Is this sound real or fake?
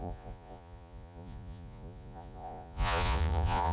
fake